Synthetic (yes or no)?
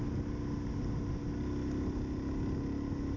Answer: no